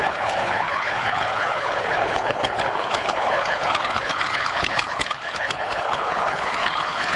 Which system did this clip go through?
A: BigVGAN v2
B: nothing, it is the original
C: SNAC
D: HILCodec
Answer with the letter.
D